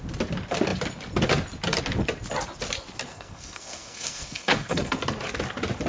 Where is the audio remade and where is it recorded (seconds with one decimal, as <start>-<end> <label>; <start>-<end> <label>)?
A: 0.0-3.1 recorded; 3.1-4.9 remade; 4.9-5.9 recorded